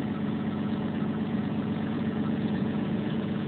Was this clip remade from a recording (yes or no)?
yes